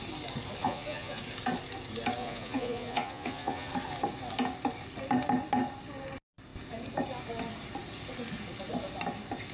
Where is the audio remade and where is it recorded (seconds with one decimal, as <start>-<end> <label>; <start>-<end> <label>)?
0.0-0.6 recorded; 0.6-1.2 remade; 1.2-2.2 recorded; 2.2-3.7 remade; 3.7-9.5 recorded